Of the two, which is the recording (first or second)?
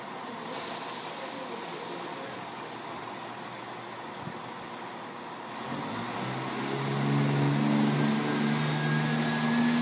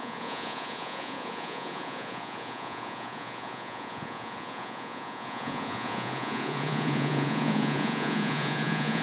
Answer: first